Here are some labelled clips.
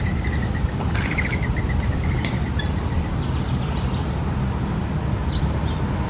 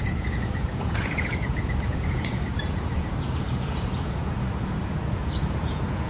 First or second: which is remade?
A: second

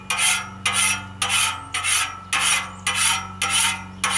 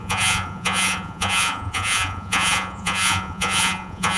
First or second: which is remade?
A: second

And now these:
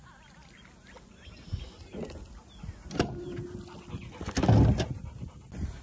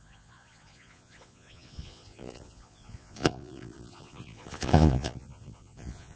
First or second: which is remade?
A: second